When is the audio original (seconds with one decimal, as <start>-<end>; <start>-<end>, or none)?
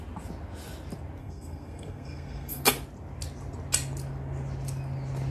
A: 0.0-1.2; 2.6-5.3